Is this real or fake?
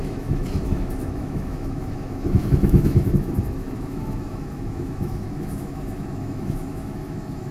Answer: fake